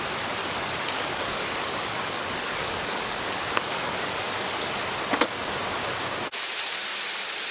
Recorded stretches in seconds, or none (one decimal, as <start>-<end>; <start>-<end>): 0.0-0.4; 4.7-7.5